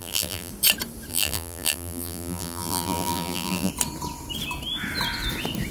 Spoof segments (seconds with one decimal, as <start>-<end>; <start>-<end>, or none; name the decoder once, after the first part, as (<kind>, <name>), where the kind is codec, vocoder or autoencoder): 0.0-0.5 (vocoder, BigVGAN v2); 1.1-3.7